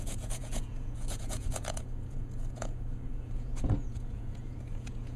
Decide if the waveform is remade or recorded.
remade